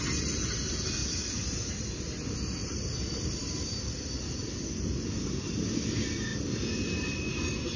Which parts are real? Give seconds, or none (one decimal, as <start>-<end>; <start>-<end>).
0.0-1.0; 1.7-2.6; 3.7-6.3